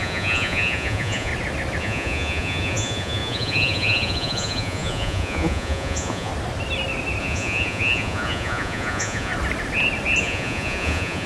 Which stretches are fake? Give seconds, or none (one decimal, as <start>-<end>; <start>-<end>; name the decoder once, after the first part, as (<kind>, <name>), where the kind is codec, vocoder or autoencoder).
0.0-1.3 (vocoder, Vocos); 1.8-6.3; 7.2-9.3; 10.2-11.3